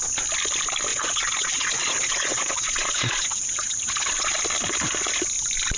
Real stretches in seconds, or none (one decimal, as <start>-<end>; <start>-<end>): 0.0-0.9; 4.4-5.8